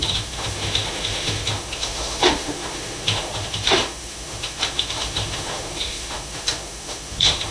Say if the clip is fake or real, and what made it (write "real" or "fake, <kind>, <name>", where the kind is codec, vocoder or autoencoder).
fake, autoencoder, DAC-VAE